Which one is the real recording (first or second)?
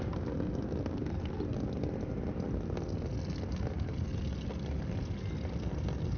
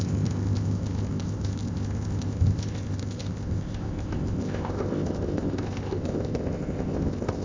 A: first